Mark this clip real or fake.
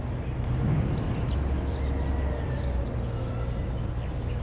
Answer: real